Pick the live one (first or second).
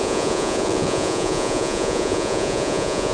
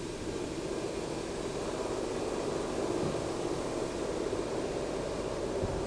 second